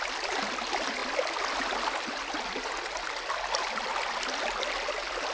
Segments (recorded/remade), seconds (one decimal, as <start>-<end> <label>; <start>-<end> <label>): 0.0-5.3 recorded